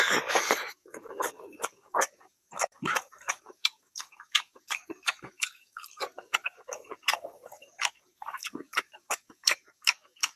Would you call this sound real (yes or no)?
no